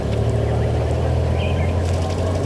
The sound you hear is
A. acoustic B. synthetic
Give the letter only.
A